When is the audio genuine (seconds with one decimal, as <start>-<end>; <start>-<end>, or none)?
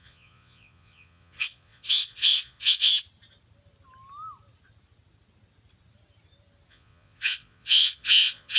2.9-6.7